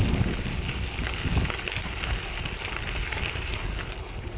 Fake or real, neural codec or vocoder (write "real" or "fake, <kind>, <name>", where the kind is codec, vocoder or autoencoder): real